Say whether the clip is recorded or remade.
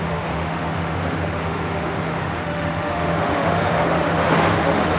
remade